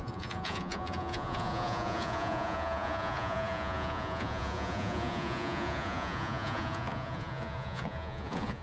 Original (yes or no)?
no